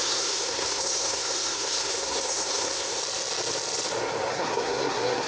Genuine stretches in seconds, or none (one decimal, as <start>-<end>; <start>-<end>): 3.0-4.3